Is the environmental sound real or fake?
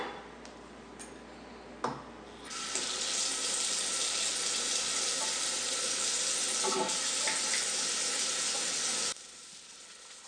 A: real